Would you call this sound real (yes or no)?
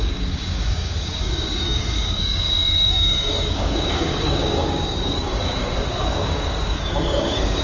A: no